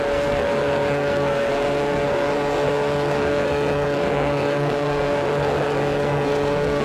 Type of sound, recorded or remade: remade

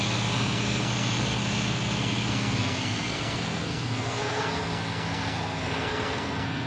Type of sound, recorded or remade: remade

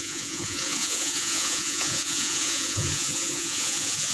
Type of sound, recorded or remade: remade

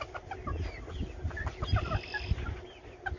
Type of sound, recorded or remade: recorded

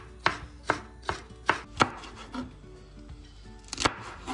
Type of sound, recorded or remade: recorded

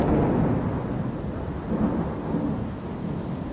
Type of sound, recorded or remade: recorded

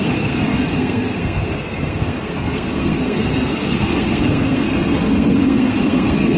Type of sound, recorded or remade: remade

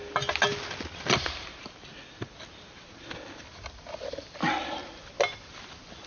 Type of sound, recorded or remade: recorded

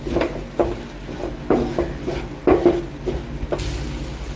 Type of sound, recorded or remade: recorded